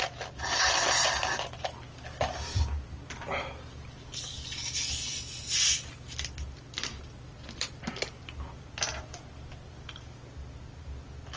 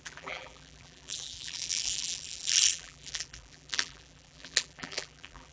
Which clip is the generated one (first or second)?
second